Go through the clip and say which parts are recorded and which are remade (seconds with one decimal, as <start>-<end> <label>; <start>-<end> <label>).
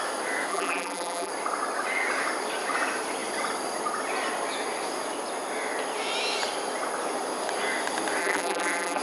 0.0-0.5 recorded; 0.5-1.3 remade; 1.3-8.2 recorded; 8.2-9.0 remade